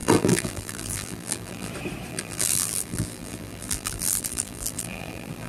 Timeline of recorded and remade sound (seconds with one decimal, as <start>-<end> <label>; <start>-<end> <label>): 0.0-1.7 remade; 1.7-2.1 recorded; 2.1-5.5 remade